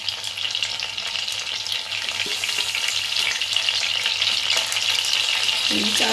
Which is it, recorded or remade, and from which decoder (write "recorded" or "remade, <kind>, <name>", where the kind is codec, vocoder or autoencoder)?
recorded